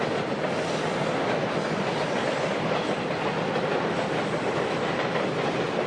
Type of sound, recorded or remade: recorded